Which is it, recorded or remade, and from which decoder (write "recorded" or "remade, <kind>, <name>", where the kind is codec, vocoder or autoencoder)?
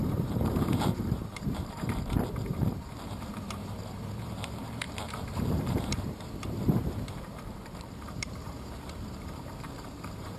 remade, vocoder, BigVGAN v2